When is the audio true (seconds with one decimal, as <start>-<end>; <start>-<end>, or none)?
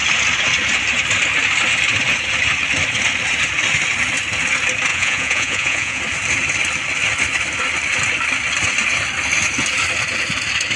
0.0-4.9; 6.0-10.8